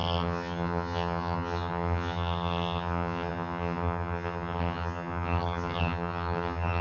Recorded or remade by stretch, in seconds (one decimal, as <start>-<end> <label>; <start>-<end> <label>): 0.0-6.8 remade

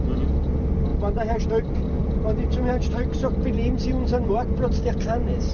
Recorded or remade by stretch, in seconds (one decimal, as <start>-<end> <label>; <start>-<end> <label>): 0.0-5.5 recorded